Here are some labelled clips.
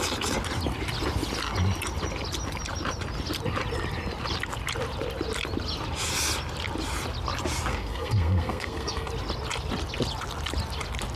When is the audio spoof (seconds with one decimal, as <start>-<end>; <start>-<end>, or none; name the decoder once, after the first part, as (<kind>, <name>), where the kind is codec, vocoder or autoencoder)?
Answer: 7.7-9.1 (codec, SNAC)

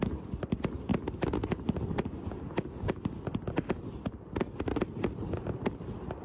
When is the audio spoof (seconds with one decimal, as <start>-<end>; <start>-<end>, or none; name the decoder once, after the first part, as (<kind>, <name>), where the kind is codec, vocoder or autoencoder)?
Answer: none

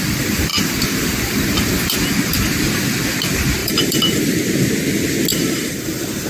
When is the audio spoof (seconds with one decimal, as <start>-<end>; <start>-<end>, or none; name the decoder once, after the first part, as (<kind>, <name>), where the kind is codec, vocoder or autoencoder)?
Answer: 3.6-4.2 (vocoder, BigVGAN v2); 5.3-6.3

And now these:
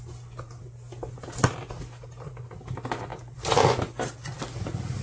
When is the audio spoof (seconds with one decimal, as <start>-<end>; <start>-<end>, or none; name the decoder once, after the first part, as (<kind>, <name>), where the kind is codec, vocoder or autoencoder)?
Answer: none

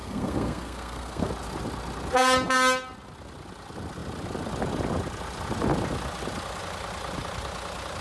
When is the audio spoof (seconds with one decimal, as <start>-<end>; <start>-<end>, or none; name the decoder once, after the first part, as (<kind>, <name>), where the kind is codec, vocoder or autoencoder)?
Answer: 0.0-1.3 (codec, SNAC)

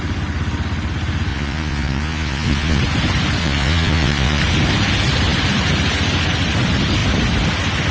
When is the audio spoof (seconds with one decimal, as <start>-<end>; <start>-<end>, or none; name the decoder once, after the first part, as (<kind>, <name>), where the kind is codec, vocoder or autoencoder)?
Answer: 1.3-2.8 (vocoder, Vocos); 3.4-4.4